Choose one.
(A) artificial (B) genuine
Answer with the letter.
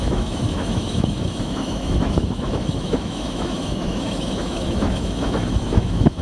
A